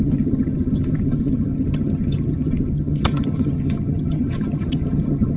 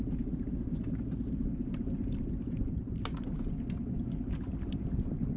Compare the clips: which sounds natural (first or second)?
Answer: second